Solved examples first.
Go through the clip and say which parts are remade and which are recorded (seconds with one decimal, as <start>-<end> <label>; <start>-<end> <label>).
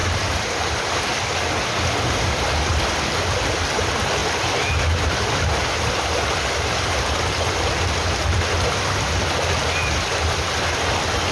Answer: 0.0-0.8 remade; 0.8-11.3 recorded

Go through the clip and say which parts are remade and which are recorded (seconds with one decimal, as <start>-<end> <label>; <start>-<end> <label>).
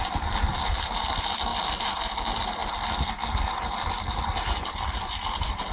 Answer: 0.0-5.7 recorded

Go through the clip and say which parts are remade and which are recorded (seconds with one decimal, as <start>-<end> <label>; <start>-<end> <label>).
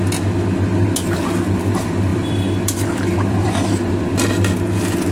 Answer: 0.0-2.1 recorded; 2.1-3.5 remade; 3.5-5.1 recorded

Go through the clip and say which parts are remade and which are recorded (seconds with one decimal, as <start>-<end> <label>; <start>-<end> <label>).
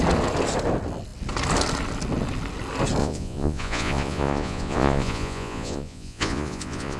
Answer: 0.0-3.0 recorded; 3.0-7.0 remade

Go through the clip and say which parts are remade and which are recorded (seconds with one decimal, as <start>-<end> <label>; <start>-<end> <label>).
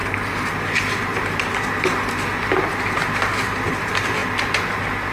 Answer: 0.0-5.1 recorded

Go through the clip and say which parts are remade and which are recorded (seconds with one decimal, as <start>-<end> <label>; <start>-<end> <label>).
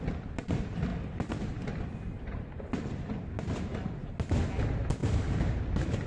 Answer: 0.0-6.1 recorded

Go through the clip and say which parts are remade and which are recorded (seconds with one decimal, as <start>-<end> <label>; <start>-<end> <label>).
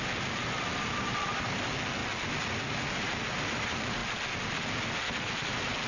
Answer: 0.0-2.0 remade; 2.0-2.5 recorded; 2.5-4.0 remade; 4.0-5.5 recorded; 5.5-5.9 remade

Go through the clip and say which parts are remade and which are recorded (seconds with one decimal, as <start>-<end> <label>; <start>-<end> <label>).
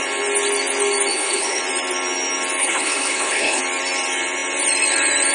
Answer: 0.0-1.1 recorded; 1.1-1.6 remade; 1.6-2.6 recorded; 2.6-3.6 remade; 3.6-5.3 recorded